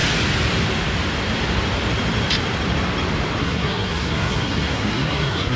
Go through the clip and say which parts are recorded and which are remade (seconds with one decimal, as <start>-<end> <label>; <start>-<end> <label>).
0.0-3.4 recorded; 3.4-5.6 remade